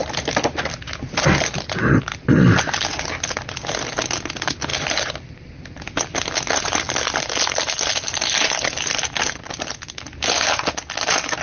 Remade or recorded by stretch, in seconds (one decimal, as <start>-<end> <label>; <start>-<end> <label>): 0.0-4.7 recorded; 4.7-9.7 remade; 9.7-11.4 recorded